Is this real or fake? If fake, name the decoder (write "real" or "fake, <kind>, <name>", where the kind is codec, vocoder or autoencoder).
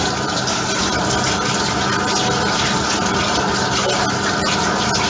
real